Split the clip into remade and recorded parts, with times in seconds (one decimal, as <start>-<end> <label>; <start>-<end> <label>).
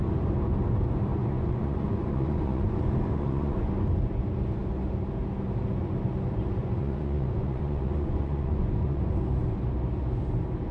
0.0-1.2 recorded; 1.2-3.7 remade; 3.7-6.6 recorded; 6.6-9.0 remade; 9.0-10.7 recorded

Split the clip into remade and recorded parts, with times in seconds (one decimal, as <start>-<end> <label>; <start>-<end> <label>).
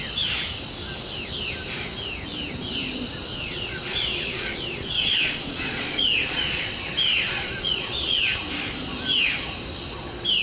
0.0-3.3 recorded; 3.3-6.6 remade; 6.6-7.1 recorded; 7.1-8.2 remade; 8.2-10.4 recorded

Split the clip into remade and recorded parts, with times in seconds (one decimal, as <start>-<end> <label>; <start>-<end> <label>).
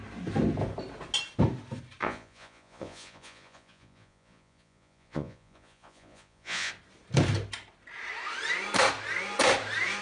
0.0-2.0 recorded; 2.0-6.7 remade; 6.7-10.0 recorded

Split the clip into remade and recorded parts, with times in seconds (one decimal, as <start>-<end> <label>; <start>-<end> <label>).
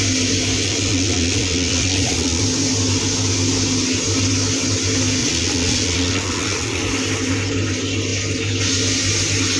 0.0-0.6 recorded; 0.6-2.4 remade; 2.4-5.2 recorded; 5.2-6.8 remade; 6.8-9.6 recorded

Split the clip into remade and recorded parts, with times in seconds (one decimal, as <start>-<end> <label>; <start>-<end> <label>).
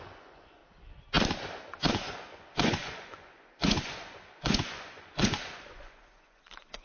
0.0-0.6 remade; 0.6-1.9 recorded; 1.9-6.8 remade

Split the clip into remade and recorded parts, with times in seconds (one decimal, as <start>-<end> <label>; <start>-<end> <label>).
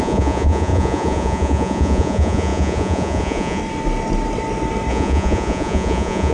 0.0-3.6 remade; 3.6-4.9 recorded; 4.9-6.3 remade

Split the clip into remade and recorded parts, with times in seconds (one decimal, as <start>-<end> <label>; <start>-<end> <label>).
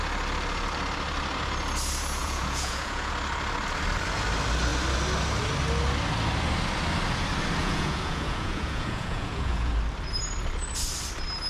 0.0-2.2 recorded; 2.2-3.1 remade; 3.1-7.6 recorded; 7.6-9.7 remade; 9.7-11.5 recorded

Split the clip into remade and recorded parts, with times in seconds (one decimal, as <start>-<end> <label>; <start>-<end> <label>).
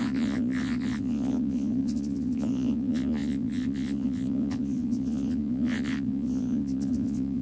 0.0-7.4 remade